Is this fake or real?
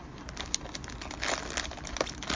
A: real